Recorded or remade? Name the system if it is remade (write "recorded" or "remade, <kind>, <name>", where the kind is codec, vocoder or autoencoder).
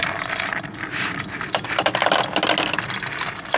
recorded